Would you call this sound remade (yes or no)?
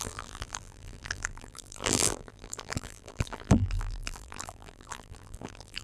yes